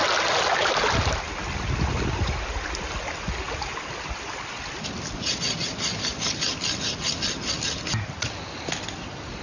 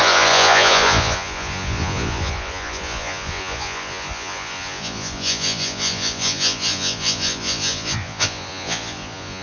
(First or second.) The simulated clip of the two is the second